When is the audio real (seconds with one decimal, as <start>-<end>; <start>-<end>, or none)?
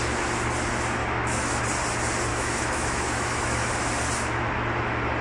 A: 0.0-1.0; 1.6-2.3; 3.7-5.2